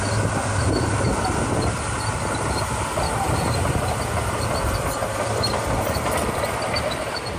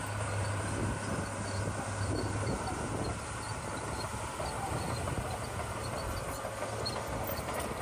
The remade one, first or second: first